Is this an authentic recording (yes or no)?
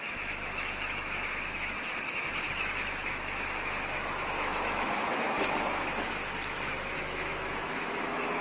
no